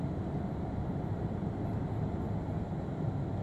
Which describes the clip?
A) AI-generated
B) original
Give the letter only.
B